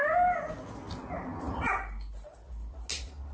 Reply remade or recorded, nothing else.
recorded